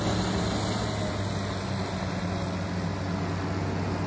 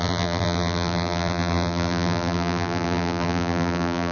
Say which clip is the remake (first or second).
second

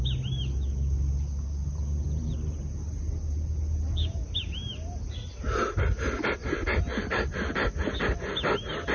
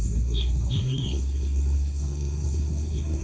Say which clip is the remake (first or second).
second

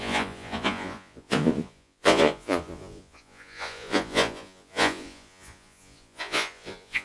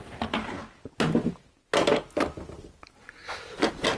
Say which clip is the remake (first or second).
first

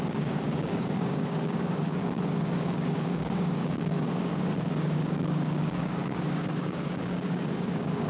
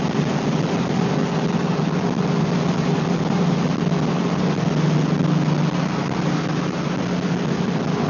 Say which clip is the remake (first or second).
first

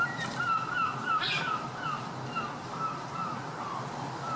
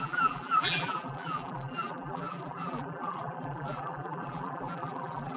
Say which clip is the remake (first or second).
second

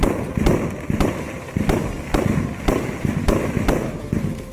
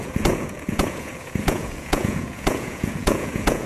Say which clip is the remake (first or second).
second